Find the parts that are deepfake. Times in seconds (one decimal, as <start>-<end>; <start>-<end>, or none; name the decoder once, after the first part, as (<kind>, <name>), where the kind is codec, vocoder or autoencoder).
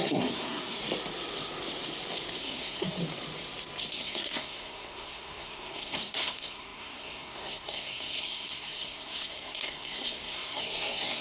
0.0-0.8 (codec, SNAC); 2.4-3.0; 3.9-11.2